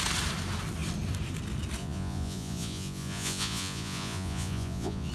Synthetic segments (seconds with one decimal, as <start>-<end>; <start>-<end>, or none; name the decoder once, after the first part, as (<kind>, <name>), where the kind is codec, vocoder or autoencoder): 1.8-5.1 (vocoder, Vocos)